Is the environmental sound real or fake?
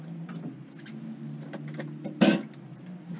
real